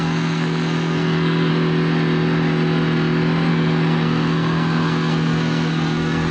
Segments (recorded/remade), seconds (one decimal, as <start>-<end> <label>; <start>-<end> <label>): 0.0-1.5 remade; 1.5-3.5 recorded; 3.5-6.3 remade

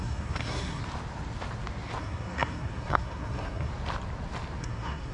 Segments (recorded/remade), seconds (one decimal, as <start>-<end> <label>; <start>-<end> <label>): 0.0-0.8 remade; 0.8-2.0 recorded; 2.0-3.7 remade; 3.7-4.6 recorded; 4.6-5.1 remade

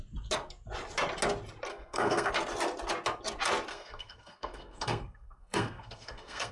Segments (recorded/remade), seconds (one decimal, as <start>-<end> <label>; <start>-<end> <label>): 0.0-1.7 recorded; 1.7-2.3 remade; 2.3-3.7 recorded; 3.7-6.5 remade

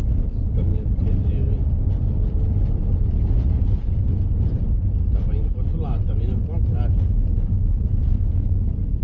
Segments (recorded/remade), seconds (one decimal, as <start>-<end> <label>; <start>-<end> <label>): 0.0-8.0 recorded; 8.0-8.6 remade; 8.6-9.0 recorded

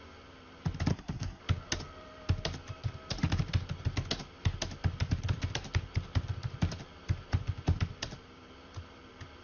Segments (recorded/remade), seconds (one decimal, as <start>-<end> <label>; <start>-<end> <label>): 0.0-0.9 recorded; 0.9-1.4 remade; 1.4-9.4 recorded